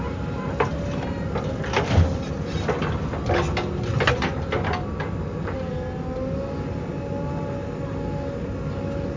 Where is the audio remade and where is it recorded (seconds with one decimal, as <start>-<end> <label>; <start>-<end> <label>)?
0.0-9.2 recorded